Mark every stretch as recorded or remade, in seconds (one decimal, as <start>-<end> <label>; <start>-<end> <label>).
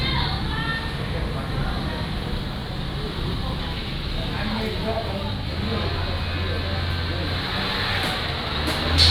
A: 0.0-0.7 recorded; 0.7-1.2 remade; 1.2-2.6 recorded; 2.6-3.6 remade; 3.6-9.1 recorded